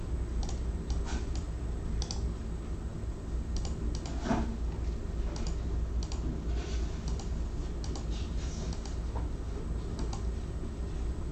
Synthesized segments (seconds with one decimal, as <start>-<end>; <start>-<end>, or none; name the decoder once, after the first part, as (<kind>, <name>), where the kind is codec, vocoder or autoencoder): none